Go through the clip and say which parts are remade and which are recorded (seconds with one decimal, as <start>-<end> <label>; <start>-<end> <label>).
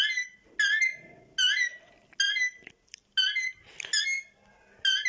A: 0.0-5.1 recorded